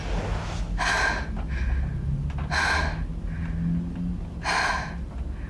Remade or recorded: recorded